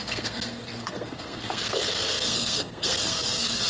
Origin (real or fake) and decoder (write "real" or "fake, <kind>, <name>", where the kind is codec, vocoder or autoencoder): fake, codec, SNAC